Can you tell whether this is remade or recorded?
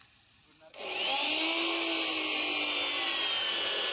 recorded